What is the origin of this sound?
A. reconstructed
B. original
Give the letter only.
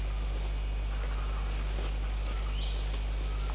B